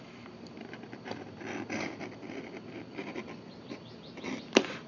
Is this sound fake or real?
fake